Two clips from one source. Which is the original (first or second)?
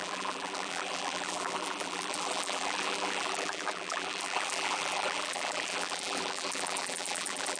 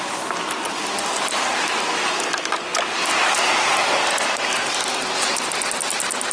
second